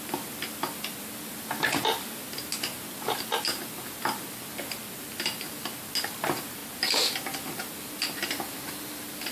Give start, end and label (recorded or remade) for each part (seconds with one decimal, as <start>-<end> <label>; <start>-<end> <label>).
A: 0.0-9.3 recorded